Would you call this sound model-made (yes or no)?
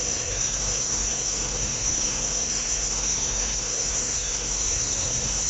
yes